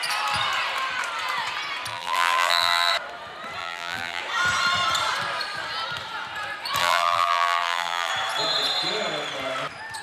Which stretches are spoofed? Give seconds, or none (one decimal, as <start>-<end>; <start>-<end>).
1.9-2.9; 3.6-4.2; 6.8-8.1